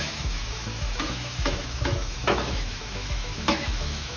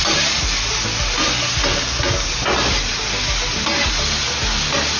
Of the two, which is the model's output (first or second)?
first